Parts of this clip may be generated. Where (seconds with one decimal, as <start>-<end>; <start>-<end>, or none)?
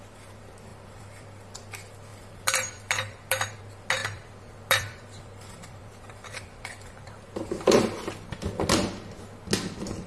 0.7-1.6; 2.1-3.6; 4.0-8.1